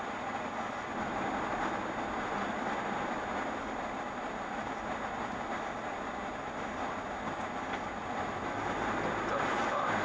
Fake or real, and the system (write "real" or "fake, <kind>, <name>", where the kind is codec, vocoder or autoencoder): real